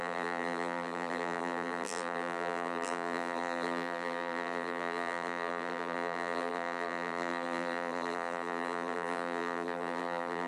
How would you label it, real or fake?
fake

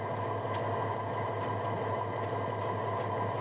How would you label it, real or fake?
real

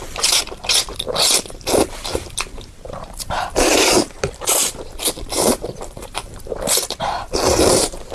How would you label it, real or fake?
fake